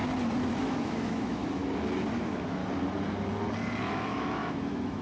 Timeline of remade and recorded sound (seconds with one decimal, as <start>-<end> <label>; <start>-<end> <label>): 0.0-0.6 recorded; 0.6-1.6 remade; 1.6-2.2 recorded; 2.2-2.6 remade; 2.6-3.8 recorded; 3.8-5.0 remade